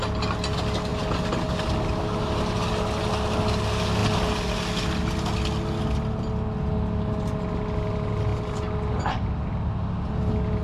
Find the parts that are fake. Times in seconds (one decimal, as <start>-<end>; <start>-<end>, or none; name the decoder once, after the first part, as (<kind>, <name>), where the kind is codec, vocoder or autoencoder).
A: none